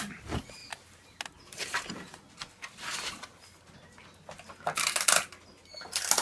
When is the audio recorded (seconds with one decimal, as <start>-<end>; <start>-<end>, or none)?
0.0-6.2